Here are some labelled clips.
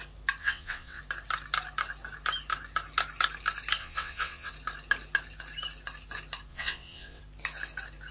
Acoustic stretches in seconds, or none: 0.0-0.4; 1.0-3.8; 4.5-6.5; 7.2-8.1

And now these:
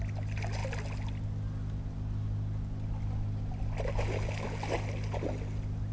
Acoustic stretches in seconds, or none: 0.0-5.9

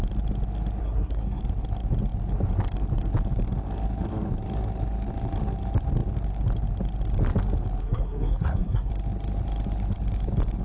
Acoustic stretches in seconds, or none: 0.0-0.8; 1.4-7.8; 8.9-10.6

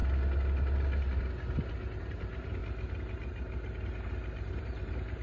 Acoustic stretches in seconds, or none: 0.0-2.0; 2.6-4.6

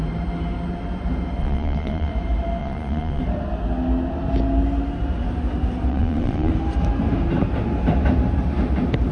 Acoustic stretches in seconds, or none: 0.0-1.4; 2.1-2.6; 3.2-5.9; 6.5-9.1

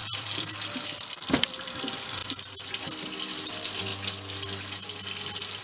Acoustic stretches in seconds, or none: 3.9-5.6

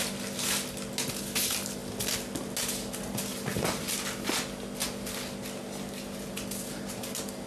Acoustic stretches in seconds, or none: 0.0-7.5